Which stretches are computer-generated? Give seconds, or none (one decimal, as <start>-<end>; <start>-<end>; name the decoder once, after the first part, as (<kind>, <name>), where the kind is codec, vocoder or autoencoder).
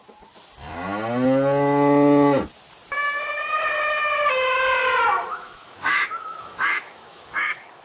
5.3-7.8 (autoencoder, DAC-VAE)